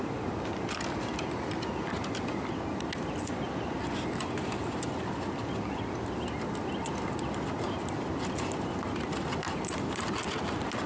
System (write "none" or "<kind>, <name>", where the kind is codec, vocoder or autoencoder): none